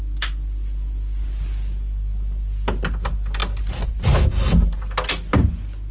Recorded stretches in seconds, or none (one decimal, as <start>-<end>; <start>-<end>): 0.0-5.9